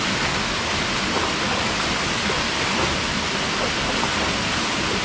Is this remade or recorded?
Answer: recorded